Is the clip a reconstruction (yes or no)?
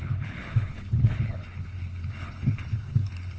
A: yes